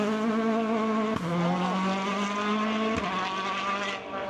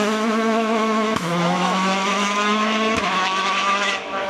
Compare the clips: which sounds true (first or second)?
first